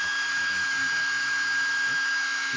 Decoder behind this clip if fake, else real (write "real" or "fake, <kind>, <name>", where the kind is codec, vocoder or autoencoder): fake, autoencoder, DAC-VAE